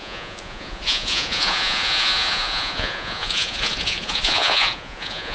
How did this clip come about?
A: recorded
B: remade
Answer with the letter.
B